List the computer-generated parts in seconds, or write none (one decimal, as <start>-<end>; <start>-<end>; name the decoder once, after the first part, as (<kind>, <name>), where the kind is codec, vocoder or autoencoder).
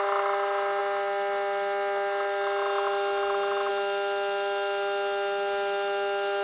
none